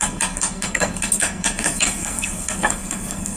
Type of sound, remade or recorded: remade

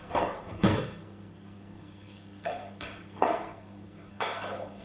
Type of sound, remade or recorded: remade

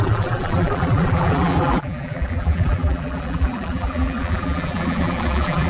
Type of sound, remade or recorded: remade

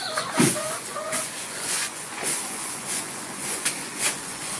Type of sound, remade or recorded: remade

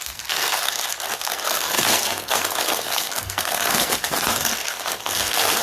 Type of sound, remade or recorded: remade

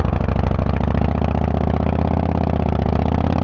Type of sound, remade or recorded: recorded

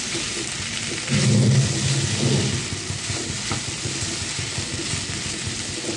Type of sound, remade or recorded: recorded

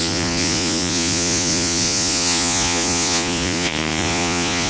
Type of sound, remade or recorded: remade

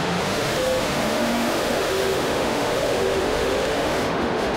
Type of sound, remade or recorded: remade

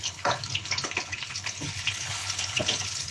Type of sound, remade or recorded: remade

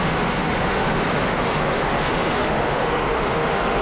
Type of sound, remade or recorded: remade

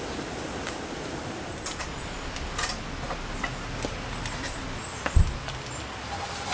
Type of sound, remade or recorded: recorded